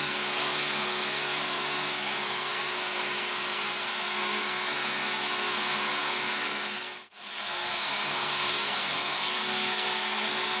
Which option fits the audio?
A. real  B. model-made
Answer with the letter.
B